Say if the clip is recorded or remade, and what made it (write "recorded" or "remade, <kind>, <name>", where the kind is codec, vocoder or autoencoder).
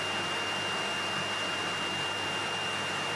recorded